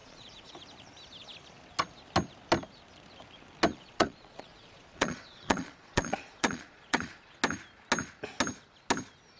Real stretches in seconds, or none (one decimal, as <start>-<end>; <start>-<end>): 0.5-3.7; 7.3-9.4

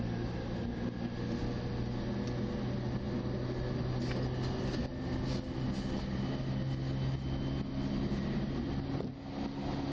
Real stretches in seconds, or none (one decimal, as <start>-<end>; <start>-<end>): 0.0-9.9